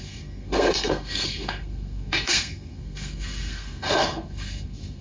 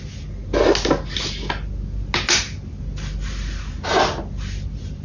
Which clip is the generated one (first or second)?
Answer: first